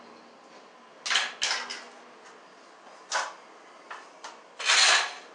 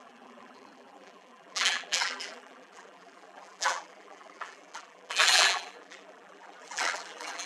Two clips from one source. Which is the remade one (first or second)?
second